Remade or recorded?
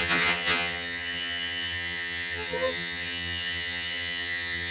remade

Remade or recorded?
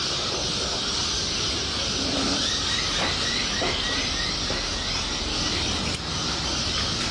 remade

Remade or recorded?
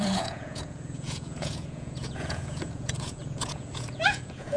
remade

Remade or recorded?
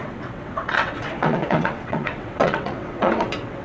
remade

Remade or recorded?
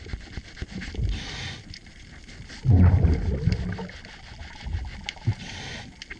recorded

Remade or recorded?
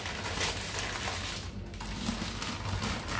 recorded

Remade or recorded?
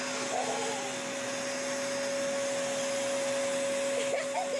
recorded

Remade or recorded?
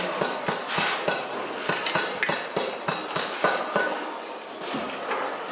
recorded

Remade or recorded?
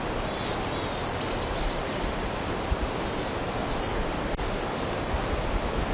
recorded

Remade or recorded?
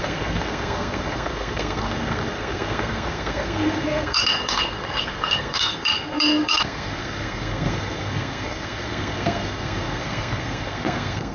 remade